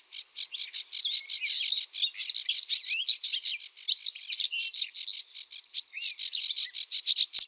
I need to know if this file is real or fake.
real